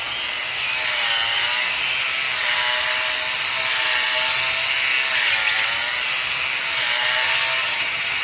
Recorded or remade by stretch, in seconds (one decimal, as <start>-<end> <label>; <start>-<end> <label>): 0.0-7.6 recorded; 7.6-8.2 remade